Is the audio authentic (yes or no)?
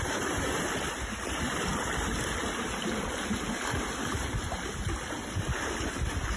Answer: no